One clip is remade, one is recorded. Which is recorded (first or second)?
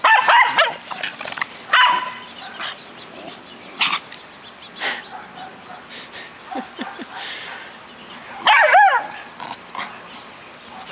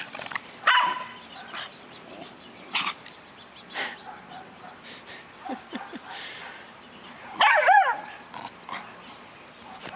first